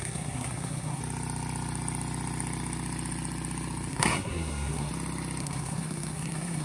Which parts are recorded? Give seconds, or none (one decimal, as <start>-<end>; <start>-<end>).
1.0-3.9; 4.9-5.4